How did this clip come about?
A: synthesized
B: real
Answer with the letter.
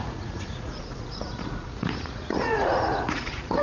A